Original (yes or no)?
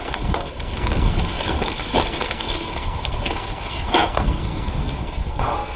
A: no